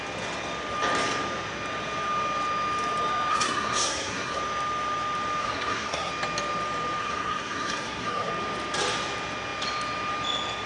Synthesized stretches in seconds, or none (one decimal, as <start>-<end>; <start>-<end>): 3.3-4.4; 5.4-6.1; 7.0-8.3